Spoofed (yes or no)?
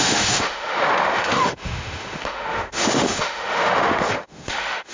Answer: yes